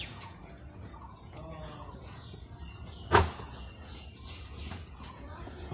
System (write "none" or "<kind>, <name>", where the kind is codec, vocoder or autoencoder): vocoder, Vocos